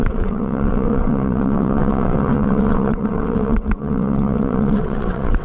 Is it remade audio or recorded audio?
remade